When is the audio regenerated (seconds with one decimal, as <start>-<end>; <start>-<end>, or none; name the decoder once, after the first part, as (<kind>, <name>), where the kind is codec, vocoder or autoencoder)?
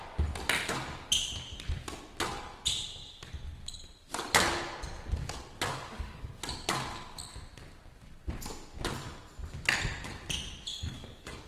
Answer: 5.7-6.4 (codec, DAC); 10.7-11.5